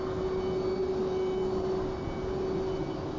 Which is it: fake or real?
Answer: real